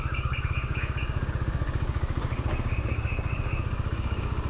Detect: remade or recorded remade